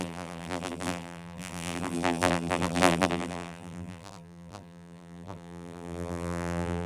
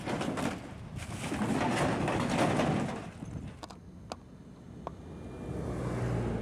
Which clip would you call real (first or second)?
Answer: second